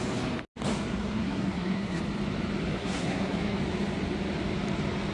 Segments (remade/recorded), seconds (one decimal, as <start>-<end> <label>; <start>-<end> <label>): 0.0-0.9 recorded; 0.9-2.0 remade; 2.0-2.7 recorded; 2.7-3.6 remade; 3.6-5.1 recorded